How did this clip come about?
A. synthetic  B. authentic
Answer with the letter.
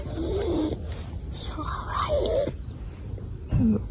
B